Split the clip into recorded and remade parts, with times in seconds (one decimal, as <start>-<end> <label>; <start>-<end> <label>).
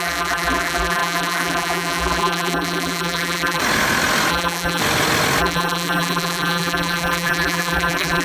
0.0-3.6 remade; 3.6-4.3 recorded; 4.3-4.8 remade; 4.8-5.4 recorded; 5.4-8.2 remade